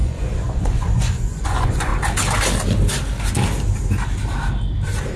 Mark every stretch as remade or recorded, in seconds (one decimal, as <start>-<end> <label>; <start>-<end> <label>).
0.0-1.9 remade; 1.9-5.2 recorded